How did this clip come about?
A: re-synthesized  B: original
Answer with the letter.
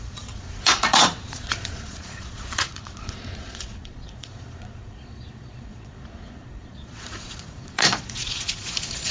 A